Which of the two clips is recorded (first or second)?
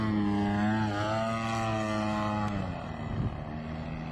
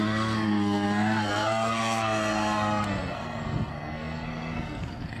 first